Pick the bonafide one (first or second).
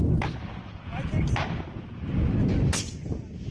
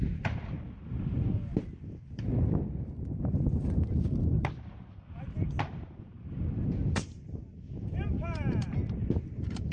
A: first